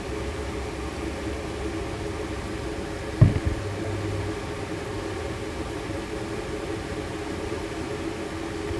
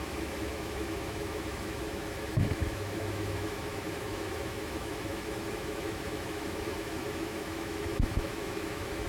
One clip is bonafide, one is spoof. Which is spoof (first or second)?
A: second